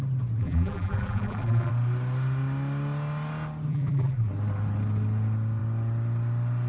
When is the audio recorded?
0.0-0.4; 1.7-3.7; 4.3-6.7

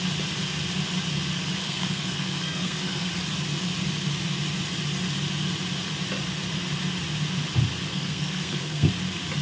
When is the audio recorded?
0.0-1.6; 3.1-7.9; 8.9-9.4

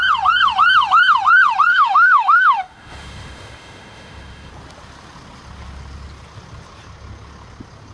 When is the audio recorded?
0.0-1.7; 4.5-7.9